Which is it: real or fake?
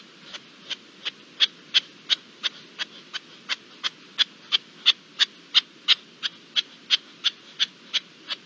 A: real